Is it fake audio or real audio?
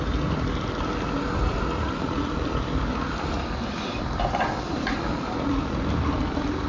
fake